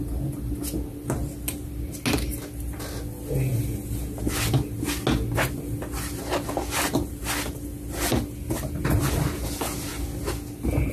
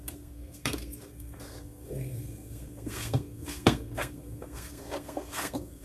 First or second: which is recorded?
first